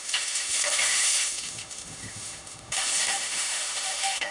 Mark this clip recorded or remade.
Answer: remade